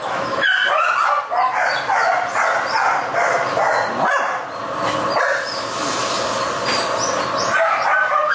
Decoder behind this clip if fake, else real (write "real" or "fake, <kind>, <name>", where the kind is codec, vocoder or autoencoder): real